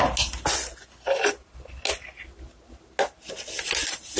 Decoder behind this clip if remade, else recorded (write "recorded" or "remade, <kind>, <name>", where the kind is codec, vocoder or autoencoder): recorded